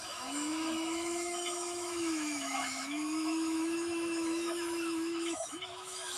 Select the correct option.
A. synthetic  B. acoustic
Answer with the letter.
A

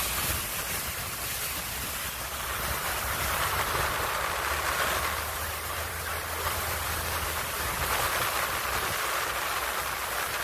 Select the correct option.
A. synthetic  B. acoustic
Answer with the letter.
A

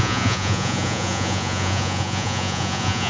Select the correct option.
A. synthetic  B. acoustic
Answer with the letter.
A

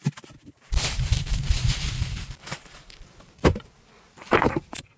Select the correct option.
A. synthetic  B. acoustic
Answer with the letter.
A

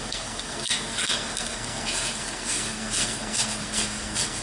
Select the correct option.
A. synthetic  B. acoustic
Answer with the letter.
A